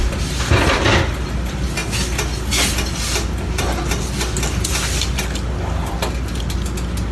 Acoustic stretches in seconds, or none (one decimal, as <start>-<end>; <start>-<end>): 0.0-7.1